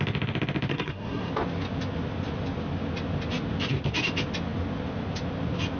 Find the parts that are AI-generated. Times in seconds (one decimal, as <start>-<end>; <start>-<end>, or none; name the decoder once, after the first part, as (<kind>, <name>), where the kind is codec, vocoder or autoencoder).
0.7-1.3 (codec, SNAC)